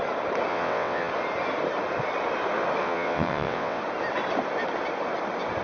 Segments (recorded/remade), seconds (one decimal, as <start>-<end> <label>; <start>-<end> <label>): 0.0-0.5 recorded; 0.5-1.1 remade; 1.1-2.8 recorded; 2.8-3.8 remade; 3.8-5.6 recorded